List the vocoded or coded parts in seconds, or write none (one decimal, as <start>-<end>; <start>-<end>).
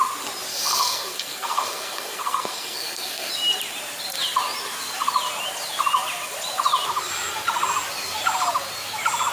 0.5-3.3